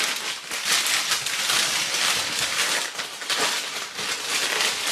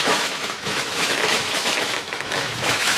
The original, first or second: first